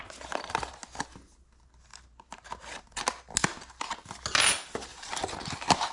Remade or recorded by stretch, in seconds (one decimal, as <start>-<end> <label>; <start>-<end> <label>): 0.0-1.9 recorded; 1.9-3.0 remade; 3.0-4.9 recorded; 4.9-5.9 remade